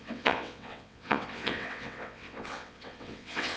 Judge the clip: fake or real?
fake